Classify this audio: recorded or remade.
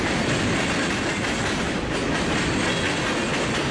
recorded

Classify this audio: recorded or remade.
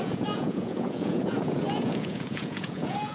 remade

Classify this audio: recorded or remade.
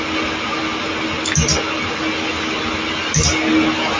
recorded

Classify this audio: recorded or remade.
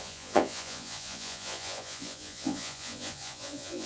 remade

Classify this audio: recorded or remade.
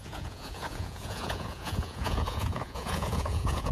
remade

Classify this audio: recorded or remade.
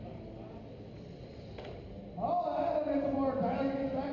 recorded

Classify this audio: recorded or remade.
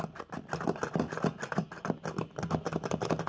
recorded